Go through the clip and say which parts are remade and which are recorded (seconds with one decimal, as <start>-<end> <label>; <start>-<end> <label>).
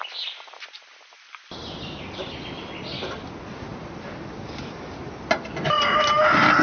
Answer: 0.0-3.7 recorded; 3.7-5.1 remade; 5.1-6.6 recorded